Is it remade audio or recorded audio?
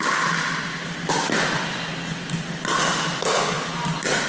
recorded